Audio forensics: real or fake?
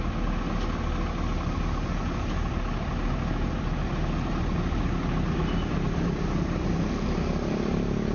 real